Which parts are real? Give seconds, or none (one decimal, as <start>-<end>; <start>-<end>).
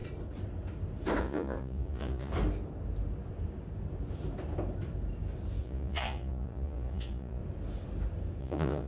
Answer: 0.0-1.2; 2.3-5.6; 7.4-8.4